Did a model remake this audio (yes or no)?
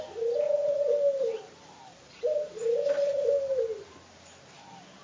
no